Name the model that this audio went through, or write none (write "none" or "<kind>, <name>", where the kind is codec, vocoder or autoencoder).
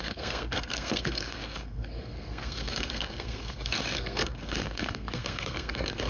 codec, SNAC